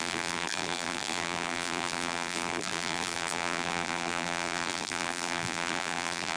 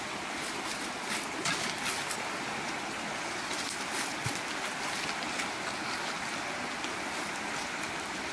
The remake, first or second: first